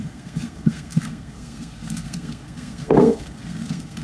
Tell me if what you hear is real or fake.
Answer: fake